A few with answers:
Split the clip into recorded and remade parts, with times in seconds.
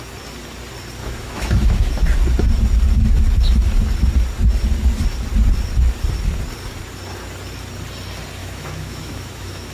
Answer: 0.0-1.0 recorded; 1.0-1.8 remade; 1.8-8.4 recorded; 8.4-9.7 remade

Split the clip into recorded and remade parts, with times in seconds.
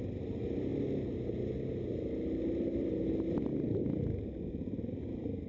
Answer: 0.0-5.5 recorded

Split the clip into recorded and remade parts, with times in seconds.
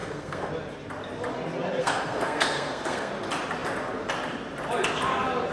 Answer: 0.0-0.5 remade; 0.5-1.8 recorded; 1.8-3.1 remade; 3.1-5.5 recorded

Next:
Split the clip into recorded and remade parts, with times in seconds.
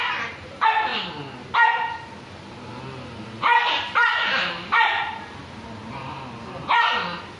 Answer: 0.0-0.9 remade; 0.9-3.1 recorded; 3.1-5.0 remade; 5.0-7.4 recorded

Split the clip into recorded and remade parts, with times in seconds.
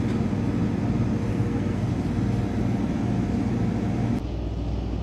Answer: 0.0-1.3 recorded; 1.3-1.9 remade; 1.9-5.0 recorded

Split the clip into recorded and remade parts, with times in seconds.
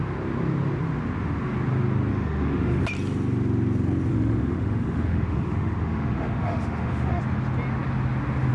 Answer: 0.0-2.1 recorded; 2.1-2.8 remade; 2.8-4.1 recorded; 4.1-7.2 remade; 7.2-8.5 recorded